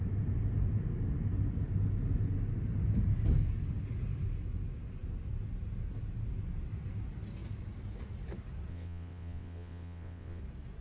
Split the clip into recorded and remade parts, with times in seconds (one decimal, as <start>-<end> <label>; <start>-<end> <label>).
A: 0.0-8.7 recorded; 8.7-10.4 remade; 10.4-10.8 recorded